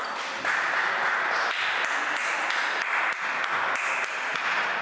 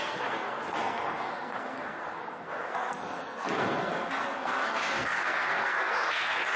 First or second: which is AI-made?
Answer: second